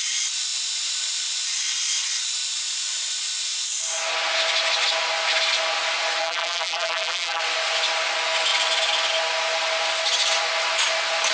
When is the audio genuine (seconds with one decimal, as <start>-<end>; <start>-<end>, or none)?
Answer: 0.0-6.2; 7.4-11.3